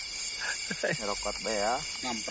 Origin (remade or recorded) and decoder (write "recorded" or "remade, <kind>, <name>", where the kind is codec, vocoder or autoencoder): recorded